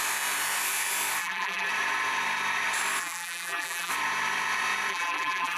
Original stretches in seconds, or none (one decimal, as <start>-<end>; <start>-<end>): 0.0-1.2; 1.7-3.0; 3.9-4.9